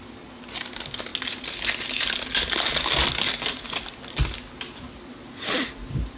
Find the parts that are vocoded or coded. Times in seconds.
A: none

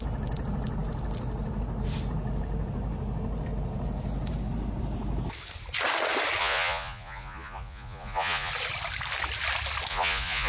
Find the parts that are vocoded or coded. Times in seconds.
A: 6.4-8.5 (vocoder, Vocos); 9.9-10.5